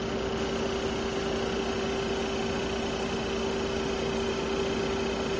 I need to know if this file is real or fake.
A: real